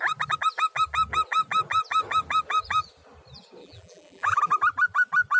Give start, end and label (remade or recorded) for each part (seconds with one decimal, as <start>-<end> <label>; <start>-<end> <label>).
0.0-3.6 recorded; 3.6-4.4 remade; 4.4-5.4 recorded